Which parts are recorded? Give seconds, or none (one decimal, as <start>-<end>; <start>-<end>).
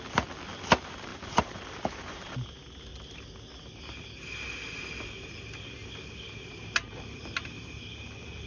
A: 0.0-1.1; 2.5-8.5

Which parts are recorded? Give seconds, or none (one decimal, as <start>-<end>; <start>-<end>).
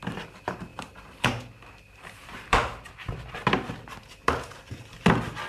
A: 0.0-0.7; 3.4-5.5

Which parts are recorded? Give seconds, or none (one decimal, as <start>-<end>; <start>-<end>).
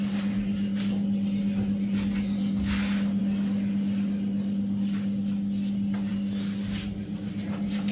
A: 0.0-7.9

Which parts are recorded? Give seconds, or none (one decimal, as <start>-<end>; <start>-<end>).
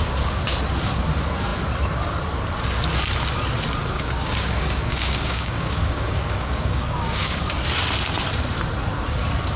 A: 0.0-3.8; 7.4-9.6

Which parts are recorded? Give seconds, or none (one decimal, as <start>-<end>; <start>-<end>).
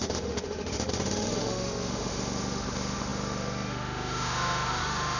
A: none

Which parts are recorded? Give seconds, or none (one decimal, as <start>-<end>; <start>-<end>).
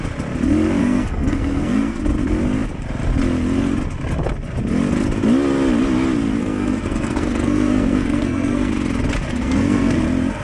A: 0.0-0.8; 2.0-6.4; 8.7-9.3; 10.0-10.4